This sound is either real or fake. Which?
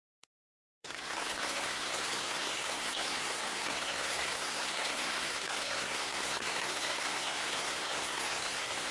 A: fake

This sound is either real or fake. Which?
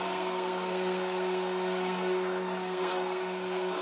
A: fake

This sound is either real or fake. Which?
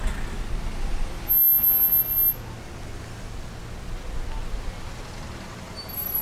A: real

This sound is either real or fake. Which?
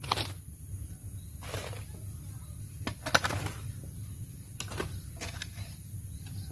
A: real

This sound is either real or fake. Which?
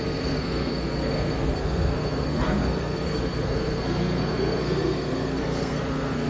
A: fake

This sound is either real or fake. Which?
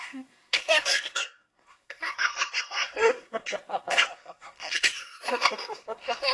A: fake